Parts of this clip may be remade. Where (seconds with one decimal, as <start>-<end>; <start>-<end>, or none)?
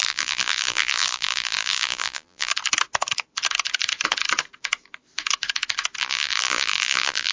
0.0-2.5; 6.0-7.3